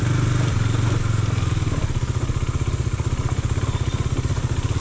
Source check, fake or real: real